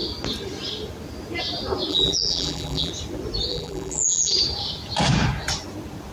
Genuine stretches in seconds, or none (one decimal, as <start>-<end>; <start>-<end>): 0.0-1.9; 2.9-3.5; 4.3-6.1

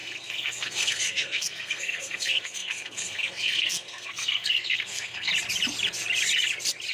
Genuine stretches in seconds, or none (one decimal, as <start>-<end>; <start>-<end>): 5.3-6.9